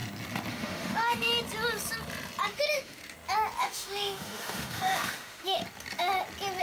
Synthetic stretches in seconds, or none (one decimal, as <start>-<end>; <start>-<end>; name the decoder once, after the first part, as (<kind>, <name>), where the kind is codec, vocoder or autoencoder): 0.5-1.3 (autoencoder, DAC-VAE); 2.5-3.0; 3.6-5.6